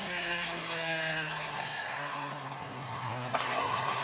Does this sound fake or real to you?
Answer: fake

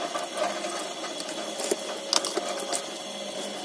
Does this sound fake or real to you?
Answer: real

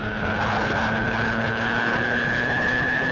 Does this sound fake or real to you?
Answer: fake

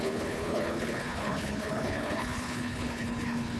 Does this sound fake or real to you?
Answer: fake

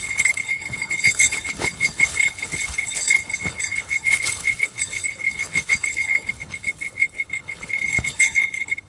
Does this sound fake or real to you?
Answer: fake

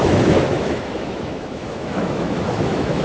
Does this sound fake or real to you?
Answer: fake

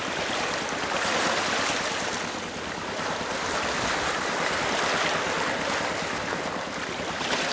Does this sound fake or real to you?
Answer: fake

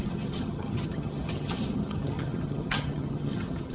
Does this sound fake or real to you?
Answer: fake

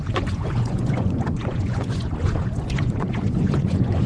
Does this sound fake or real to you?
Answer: fake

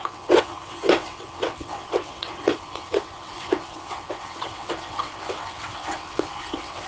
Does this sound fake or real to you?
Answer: fake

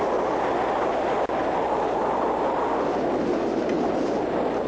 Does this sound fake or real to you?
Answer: real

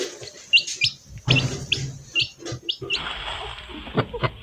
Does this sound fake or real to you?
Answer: real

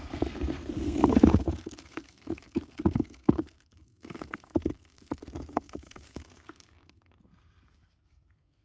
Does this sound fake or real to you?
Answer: fake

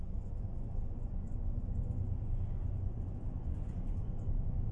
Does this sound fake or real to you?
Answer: fake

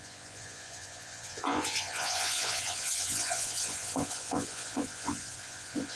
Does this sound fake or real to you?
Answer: fake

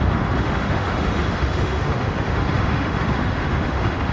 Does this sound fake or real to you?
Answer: fake